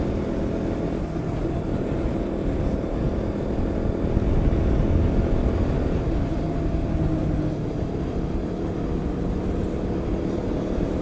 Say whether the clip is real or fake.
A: real